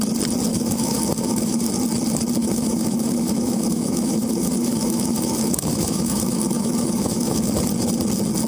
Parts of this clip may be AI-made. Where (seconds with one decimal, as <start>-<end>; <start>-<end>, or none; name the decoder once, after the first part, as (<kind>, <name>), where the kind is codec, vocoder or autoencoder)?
0.5-1.7 (autoencoder, DAC-VAE); 2.4-7.5